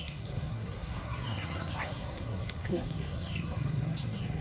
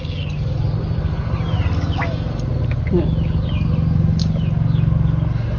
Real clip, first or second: second